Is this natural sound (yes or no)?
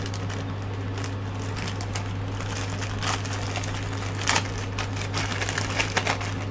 yes